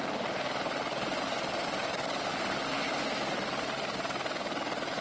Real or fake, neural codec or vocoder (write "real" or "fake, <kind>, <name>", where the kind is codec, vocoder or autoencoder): real